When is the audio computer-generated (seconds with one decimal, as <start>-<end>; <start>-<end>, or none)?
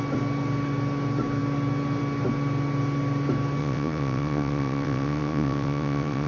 3.6-6.3